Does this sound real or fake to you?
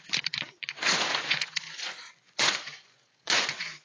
fake